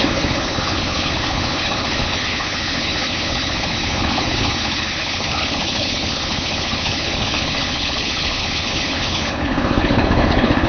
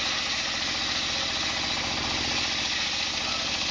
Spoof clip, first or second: first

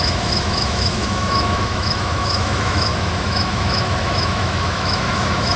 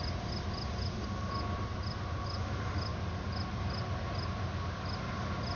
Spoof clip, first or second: first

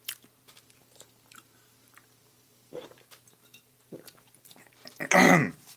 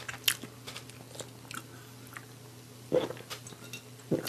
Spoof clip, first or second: first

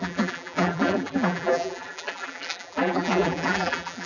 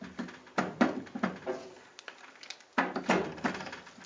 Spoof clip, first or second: first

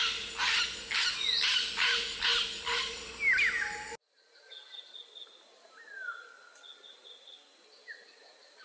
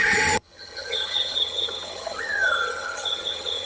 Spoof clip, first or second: second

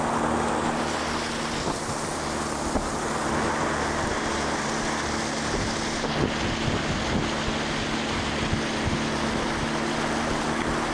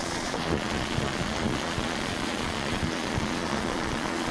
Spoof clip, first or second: second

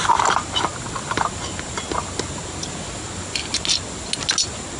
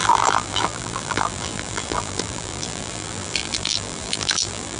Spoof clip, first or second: second